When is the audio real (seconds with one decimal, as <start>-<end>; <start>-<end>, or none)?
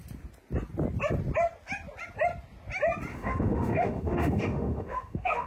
0.0-3.1